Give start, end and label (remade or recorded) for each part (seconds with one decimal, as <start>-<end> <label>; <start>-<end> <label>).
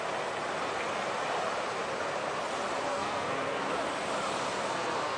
0.0-2.9 recorded; 2.9-3.6 remade; 3.6-4.6 recorded; 4.6-5.2 remade